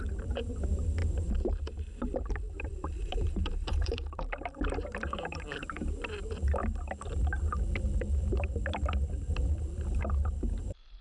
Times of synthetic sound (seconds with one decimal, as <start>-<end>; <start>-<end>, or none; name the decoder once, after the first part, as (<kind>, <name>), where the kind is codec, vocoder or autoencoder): 0.0-6.6 (vocoder, BigVGAN v2); 9.9-11.0